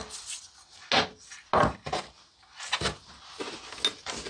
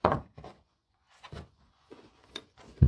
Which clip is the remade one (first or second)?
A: second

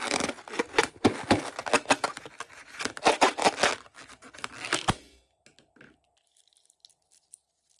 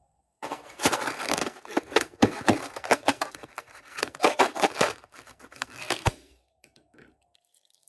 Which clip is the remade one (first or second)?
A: second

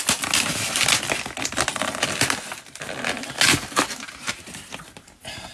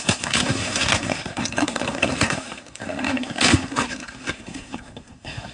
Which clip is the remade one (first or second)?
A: second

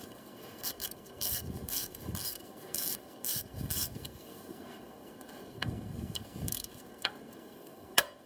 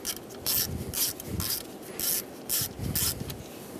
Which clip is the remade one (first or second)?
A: first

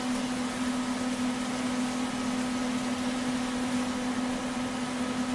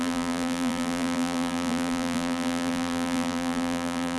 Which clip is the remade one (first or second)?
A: second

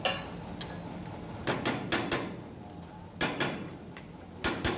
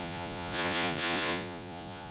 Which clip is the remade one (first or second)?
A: second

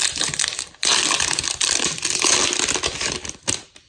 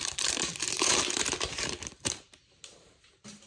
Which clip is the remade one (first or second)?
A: second